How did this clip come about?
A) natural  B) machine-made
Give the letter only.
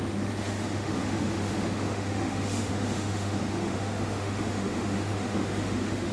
B